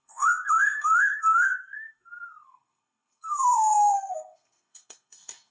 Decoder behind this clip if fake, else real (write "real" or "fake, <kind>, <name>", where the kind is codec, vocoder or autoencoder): fake, codec, SNAC